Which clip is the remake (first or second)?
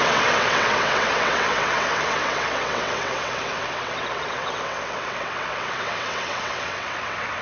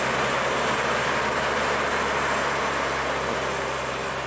first